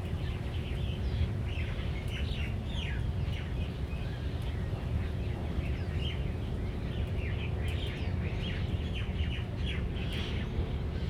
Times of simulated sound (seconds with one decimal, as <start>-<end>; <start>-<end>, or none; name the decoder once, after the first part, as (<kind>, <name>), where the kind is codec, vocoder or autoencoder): 5.4-6.6 (vocoder, BigVGAN v2)